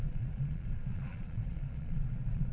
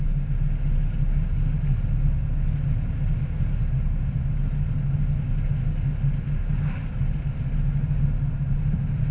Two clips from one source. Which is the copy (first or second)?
first